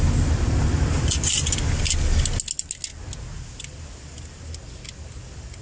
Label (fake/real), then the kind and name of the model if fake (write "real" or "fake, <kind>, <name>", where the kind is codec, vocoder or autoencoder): real